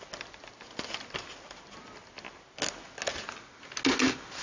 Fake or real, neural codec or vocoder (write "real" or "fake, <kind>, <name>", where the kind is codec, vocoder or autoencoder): real